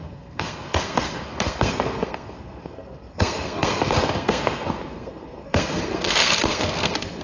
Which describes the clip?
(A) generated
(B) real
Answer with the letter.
A